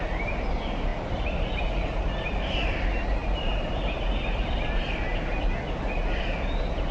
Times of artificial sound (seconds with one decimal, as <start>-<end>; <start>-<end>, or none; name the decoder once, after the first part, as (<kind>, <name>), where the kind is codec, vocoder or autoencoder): none